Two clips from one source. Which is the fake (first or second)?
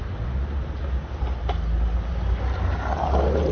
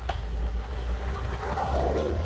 second